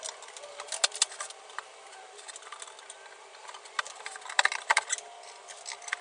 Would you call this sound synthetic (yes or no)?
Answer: no